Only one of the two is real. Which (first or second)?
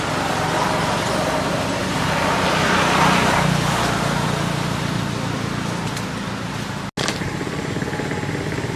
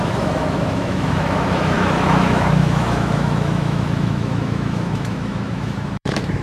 first